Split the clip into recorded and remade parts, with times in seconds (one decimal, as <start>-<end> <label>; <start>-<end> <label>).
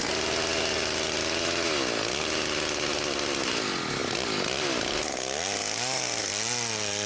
0.0-7.1 recorded